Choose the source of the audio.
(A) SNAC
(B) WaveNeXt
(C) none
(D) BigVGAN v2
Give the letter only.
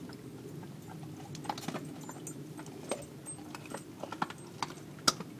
C